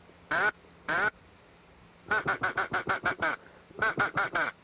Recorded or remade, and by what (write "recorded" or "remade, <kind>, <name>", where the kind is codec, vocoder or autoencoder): recorded